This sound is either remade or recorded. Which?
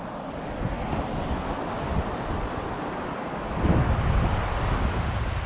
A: recorded